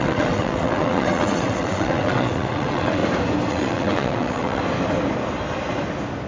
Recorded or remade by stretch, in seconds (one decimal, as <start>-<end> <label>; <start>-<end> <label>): 0.0-3.0 remade; 3.0-3.5 recorded; 3.5-4.6 remade; 4.6-6.3 recorded